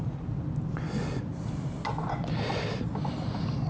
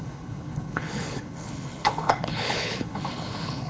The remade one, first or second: second